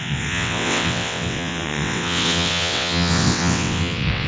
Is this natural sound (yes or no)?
no